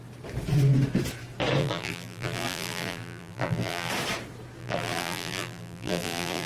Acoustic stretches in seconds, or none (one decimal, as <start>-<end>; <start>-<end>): 0.0-1.6; 3.9-4.6